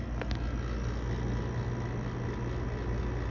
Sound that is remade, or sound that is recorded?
recorded